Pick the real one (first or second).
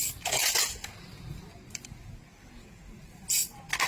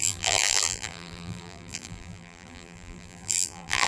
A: first